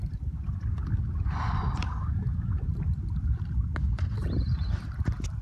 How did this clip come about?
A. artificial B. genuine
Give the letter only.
B